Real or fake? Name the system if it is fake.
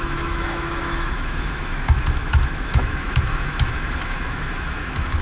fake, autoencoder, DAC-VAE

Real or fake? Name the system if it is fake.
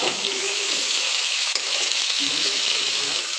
fake, autoencoder, DAC-VAE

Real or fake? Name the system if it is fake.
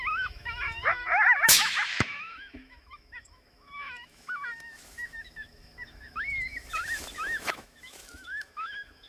fake, autoencoder, DAC-VAE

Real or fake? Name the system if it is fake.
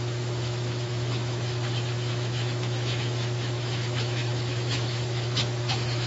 fake, autoencoder, DAC-VAE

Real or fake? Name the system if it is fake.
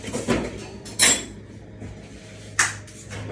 real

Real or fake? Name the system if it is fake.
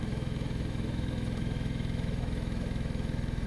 fake, autoencoder, DAC-VAE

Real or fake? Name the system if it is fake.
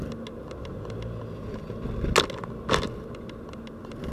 real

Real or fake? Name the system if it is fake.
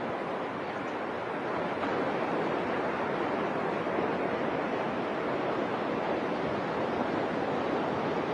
real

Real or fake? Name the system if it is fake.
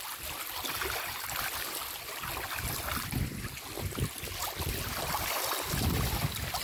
real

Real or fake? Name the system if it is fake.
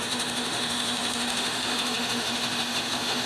fake, autoencoder, DAC-VAE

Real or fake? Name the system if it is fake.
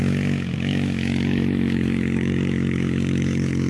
fake, autoencoder, DAC-VAE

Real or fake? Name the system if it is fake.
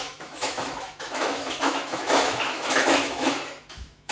fake, autoencoder, DAC-VAE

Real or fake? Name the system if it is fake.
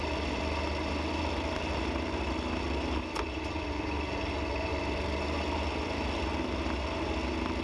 real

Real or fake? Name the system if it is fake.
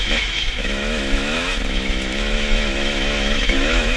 fake, autoencoder, DAC-VAE